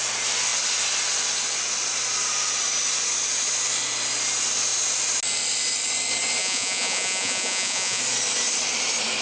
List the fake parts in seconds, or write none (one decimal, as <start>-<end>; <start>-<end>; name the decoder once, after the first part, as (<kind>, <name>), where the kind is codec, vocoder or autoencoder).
6.4-8.0 (vocoder, Vocos)